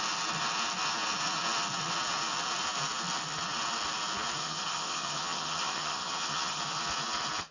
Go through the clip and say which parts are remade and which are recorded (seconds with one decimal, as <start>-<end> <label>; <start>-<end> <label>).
0.0-4.4 recorded; 4.4-6.6 remade; 6.6-7.5 recorded